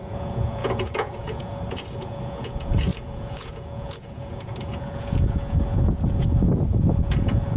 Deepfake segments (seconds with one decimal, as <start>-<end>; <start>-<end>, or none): 0.0-7.6